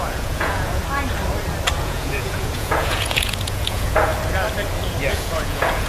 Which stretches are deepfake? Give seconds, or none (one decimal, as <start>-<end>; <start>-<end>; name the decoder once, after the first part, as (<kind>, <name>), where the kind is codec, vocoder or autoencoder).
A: 0.0-0.8 (vocoder, Vocos); 1.8-4.1; 5.1-5.9